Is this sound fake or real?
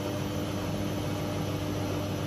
real